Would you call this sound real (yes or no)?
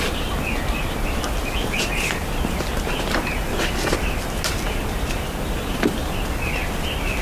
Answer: yes